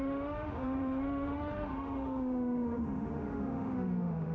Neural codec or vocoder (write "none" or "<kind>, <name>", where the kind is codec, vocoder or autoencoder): autoencoder, DAC-VAE